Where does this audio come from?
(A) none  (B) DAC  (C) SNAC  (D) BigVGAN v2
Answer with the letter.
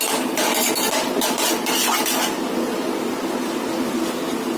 A